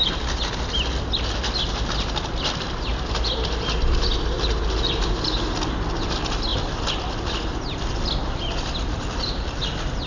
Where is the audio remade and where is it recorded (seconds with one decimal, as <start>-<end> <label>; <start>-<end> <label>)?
0.0-10.1 recorded